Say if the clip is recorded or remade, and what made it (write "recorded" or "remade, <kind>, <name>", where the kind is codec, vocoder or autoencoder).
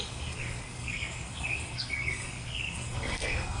remade, codec, SNAC